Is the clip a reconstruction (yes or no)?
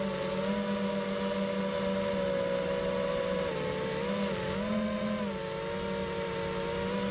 no